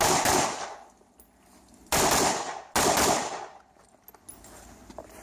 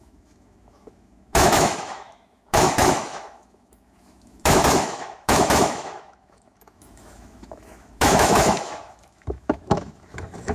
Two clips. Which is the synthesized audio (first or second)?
second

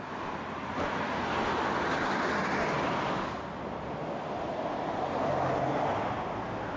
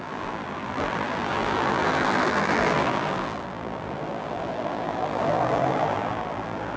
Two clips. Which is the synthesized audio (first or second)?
second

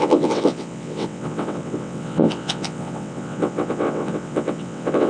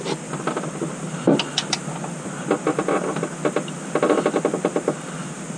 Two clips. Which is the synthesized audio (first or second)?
first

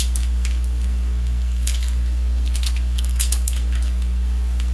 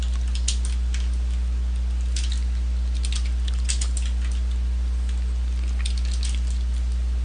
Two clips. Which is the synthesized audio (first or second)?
first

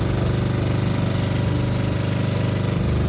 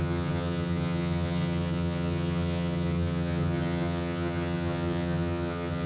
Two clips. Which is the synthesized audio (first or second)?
second